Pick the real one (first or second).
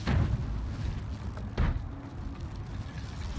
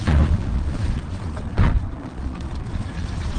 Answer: first